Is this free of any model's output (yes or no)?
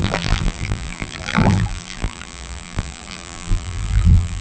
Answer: no